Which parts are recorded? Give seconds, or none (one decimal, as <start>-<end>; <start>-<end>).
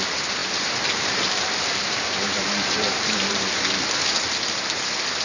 0.0-0.4; 3.5-5.2